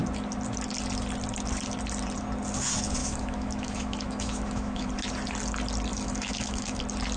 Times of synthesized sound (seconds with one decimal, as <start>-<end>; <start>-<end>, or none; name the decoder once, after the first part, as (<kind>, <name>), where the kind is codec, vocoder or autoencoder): 3.0-4.9 (autoencoder, DAC-VAE); 5.9-6.8